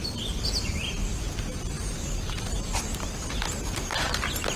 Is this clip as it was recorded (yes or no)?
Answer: no